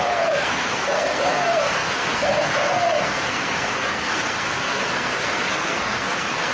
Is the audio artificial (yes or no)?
yes